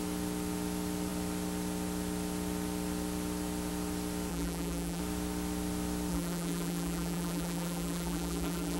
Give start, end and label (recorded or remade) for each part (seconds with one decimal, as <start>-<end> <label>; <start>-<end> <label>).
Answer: 0.0-4.3 recorded; 4.3-5.0 remade; 5.0-6.1 recorded; 6.1-8.8 remade